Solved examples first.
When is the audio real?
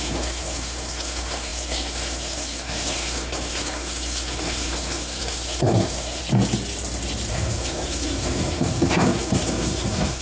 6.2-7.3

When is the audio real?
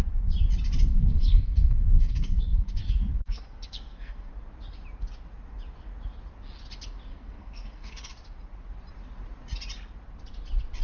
0.0-0.9; 4.3-7.1; 8.1-10.8